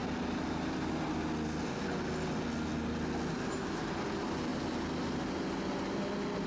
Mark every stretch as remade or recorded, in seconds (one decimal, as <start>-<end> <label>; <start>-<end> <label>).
0.0-6.5 recorded